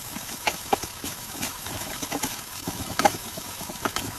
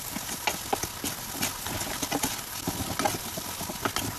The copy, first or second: first